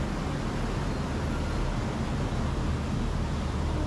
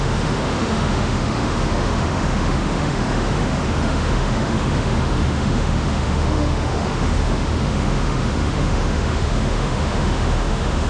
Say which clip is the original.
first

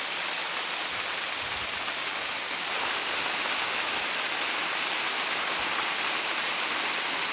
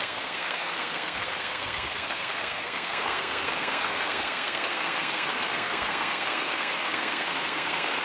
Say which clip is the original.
first